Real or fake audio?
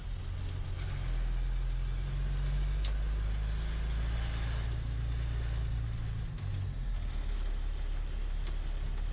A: real